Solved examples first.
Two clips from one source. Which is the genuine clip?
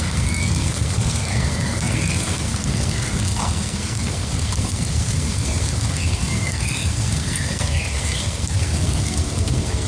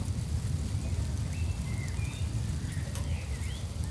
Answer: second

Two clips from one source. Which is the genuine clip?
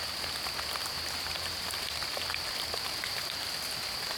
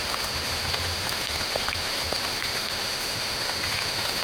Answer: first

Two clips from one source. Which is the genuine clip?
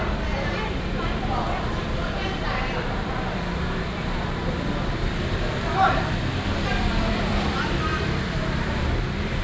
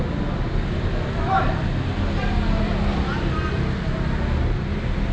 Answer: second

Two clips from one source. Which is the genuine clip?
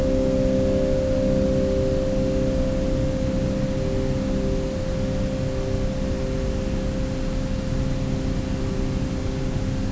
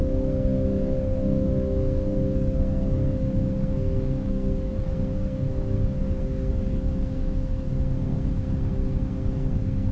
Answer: first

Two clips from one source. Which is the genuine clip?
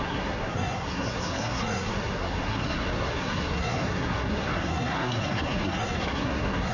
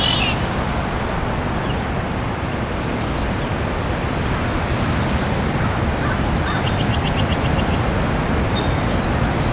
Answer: second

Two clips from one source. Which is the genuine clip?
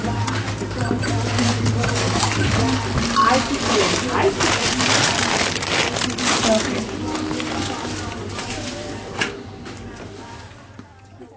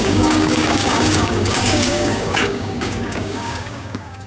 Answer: first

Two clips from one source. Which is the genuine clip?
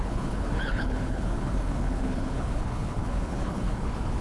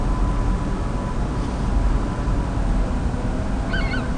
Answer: second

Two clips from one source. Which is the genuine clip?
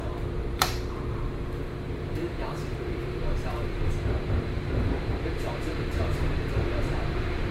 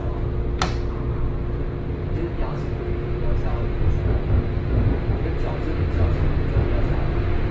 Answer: second